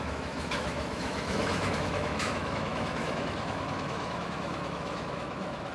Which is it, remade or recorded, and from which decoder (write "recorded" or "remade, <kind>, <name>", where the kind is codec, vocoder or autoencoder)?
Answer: remade, autoencoder, DAC-VAE